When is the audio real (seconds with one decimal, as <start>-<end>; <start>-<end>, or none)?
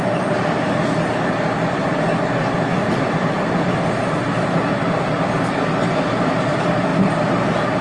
0.0-7.8